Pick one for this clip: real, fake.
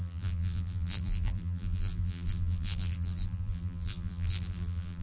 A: fake